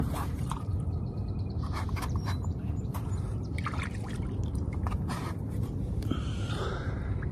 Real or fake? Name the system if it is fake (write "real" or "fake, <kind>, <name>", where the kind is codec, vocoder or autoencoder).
fake, vocoder, BigVGAN v2